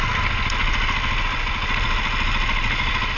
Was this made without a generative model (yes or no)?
yes